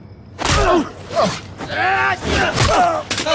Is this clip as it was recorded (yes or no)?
yes